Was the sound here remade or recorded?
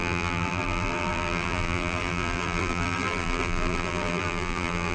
remade